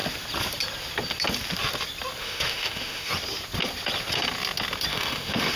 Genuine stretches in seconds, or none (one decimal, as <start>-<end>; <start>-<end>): 0.0-2.2; 3.1-4.9